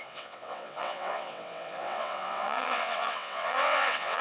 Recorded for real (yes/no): no